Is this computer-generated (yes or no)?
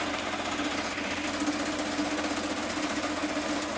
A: no